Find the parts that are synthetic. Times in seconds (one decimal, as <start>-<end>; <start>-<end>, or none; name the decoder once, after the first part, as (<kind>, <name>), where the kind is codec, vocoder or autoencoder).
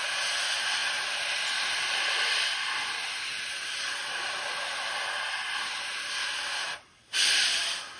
none